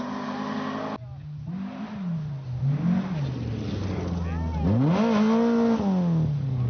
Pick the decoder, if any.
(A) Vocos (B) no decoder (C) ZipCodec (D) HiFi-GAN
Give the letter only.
B